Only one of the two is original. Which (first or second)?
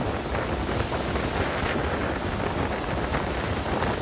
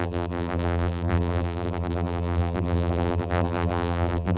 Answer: first